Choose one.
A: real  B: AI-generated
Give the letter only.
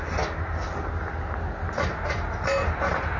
A